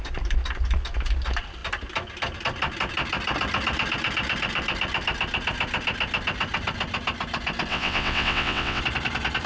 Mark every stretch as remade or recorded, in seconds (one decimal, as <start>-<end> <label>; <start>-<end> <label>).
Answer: 0.0-7.7 recorded; 7.7-8.8 remade; 8.8-9.5 recorded